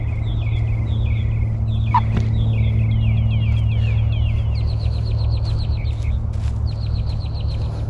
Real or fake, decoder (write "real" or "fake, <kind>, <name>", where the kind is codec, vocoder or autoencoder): real